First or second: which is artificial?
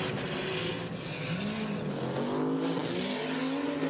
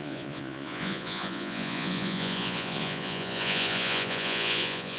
second